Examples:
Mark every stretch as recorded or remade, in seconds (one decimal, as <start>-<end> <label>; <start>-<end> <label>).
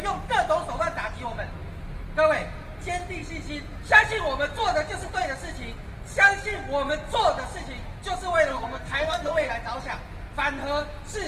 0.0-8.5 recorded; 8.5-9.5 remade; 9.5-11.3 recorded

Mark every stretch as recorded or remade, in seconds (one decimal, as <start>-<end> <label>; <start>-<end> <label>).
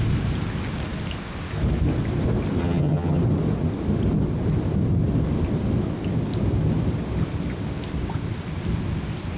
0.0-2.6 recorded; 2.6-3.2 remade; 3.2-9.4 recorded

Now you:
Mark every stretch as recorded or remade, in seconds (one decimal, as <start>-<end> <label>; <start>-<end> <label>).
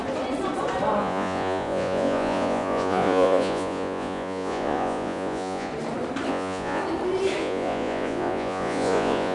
0.0-1.0 recorded; 1.0-5.7 remade; 5.7-6.3 recorded; 6.3-6.8 remade; 6.8-7.4 recorded; 7.4-9.3 remade